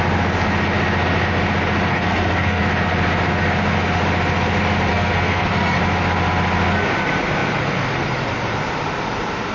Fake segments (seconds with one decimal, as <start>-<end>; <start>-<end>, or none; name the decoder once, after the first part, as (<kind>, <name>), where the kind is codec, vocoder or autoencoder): 1.9-2.6 (codec, SNAC); 4.9-5.8